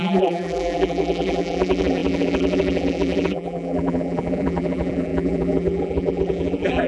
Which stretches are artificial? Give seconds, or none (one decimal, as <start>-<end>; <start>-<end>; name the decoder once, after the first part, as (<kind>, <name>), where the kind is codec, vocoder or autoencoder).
0.0-6.9 (vocoder, BigVGAN v2)